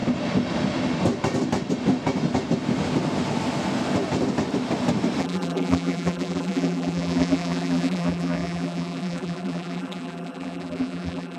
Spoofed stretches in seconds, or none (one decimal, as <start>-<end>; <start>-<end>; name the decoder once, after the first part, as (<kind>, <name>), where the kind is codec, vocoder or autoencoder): 5.2-11.4 (vocoder, BigVGAN v2)